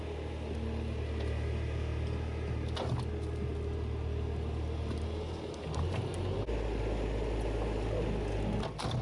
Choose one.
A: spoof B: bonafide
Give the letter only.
B